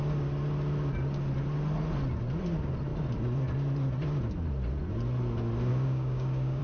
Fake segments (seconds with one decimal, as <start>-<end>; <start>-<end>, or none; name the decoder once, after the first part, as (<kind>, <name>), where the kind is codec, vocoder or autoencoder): 5.7-6.6 (codec, DAC)